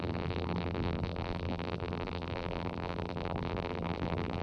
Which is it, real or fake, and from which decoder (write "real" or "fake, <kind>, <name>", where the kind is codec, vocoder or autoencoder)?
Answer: fake, vocoder, BigVGAN v2